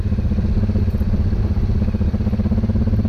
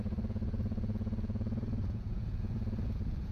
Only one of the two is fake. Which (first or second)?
second